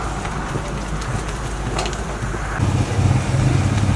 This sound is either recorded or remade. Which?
recorded